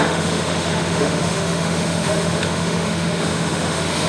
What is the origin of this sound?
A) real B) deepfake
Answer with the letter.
B